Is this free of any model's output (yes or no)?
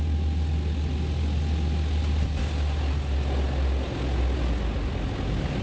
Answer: yes